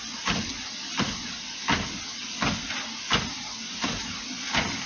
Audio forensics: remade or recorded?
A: recorded